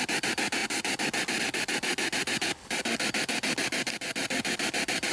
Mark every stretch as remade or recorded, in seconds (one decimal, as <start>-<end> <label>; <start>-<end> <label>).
0.0-5.1 recorded